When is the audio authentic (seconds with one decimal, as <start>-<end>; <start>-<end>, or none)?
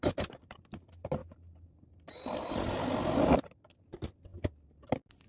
0.0-5.3